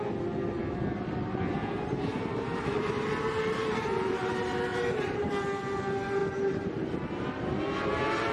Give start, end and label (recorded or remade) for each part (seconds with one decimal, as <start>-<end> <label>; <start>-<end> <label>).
0.0-1.6 recorded; 1.6-4.3 remade; 4.3-4.7 recorded; 4.7-5.3 remade; 5.3-6.2 recorded; 6.2-7.6 remade; 7.6-8.3 recorded